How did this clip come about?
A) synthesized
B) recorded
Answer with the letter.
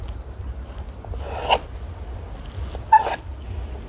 B